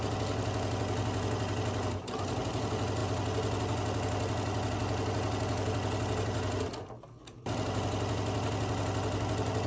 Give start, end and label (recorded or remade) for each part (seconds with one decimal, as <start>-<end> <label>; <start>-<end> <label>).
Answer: 0.0-9.7 recorded